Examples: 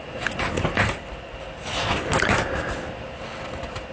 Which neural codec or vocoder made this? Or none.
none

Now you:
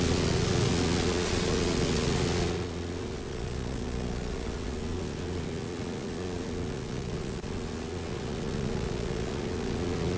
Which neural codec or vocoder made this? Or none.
vocoder, Vocos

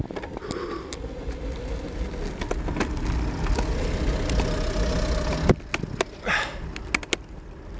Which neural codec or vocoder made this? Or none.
none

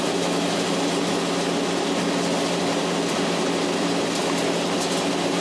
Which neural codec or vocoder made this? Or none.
none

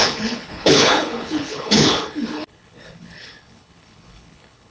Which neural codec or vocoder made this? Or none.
codec, HILCodec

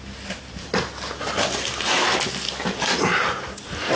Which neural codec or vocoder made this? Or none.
none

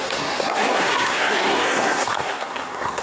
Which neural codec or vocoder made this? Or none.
codec, SNAC